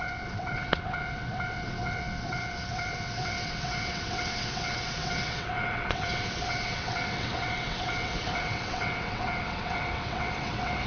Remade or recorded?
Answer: remade